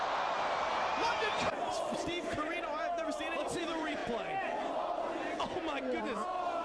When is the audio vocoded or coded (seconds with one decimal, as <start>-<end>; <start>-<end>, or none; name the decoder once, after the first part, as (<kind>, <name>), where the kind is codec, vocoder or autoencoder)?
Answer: 0.0-0.9 (vocoder, BigVGAN v2); 1.7-2.4; 3.0-4.0; 6.0-6.6